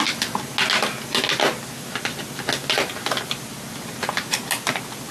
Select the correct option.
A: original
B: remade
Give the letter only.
A